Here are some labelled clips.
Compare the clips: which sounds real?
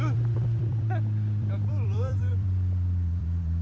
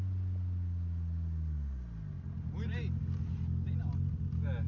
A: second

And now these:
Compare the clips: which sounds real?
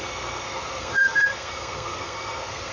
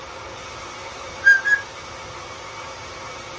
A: second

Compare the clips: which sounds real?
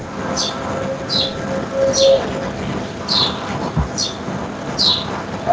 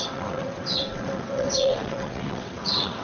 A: first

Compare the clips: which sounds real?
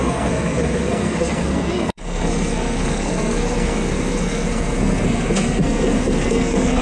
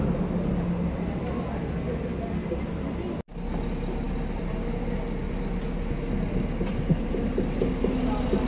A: second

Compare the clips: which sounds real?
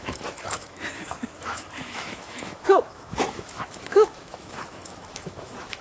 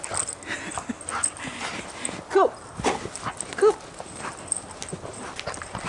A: second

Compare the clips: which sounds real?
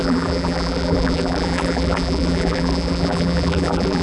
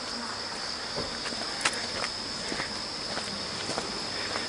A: second